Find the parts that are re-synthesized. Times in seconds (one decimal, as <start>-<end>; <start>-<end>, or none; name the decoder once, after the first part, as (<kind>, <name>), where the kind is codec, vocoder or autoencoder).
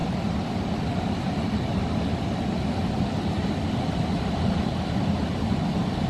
none